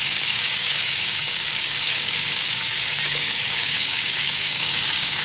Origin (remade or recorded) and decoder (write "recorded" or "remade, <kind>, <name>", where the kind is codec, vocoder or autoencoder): remade, codec, DAC